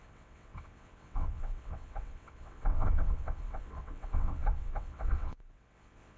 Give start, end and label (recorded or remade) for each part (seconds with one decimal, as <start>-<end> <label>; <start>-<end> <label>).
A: 0.0-6.2 remade

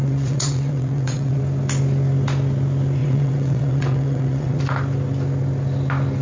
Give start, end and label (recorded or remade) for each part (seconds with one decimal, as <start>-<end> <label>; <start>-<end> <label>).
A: 0.0-1.4 remade; 1.4-3.0 recorded; 3.0-4.6 remade; 4.6-6.2 recorded

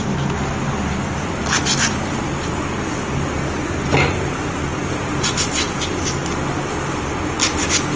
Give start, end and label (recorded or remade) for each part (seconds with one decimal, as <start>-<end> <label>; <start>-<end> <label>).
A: 0.0-8.0 recorded

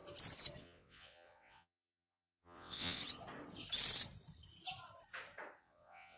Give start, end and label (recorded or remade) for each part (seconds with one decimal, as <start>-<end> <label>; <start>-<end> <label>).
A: 0.0-0.6 recorded; 0.6-3.0 remade; 3.0-5.6 recorded; 5.6-6.2 remade

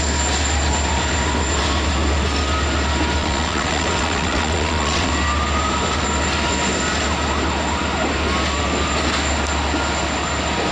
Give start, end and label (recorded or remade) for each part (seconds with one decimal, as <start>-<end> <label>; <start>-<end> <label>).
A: 0.0-3.2 recorded; 3.2-5.1 remade; 5.1-10.7 recorded

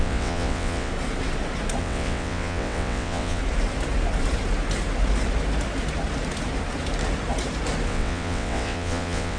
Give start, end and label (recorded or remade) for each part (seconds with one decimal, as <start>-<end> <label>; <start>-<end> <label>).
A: 0.0-0.9 remade; 0.9-1.8 recorded; 1.8-3.4 remade; 3.4-7.9 recorded; 7.9-9.4 remade

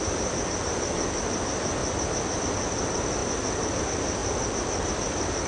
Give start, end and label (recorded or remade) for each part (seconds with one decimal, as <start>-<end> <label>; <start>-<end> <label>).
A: 0.0-5.5 recorded